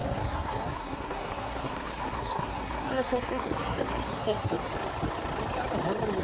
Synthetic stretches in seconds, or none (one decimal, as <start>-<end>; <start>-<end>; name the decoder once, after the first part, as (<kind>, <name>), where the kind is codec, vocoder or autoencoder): 0.0-4.7 (codec, SNAC)

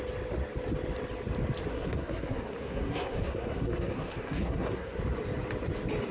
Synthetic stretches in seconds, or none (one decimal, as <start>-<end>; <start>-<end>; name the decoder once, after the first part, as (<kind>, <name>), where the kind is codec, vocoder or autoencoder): 1.7-5.0 (codec, SNAC)

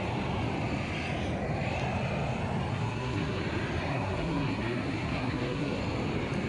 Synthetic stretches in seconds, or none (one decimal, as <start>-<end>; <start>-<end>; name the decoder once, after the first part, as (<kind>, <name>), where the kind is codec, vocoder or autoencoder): 2.7-3.4 (codec, SNAC); 3.9-5.8